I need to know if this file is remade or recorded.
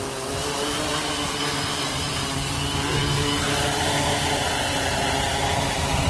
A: recorded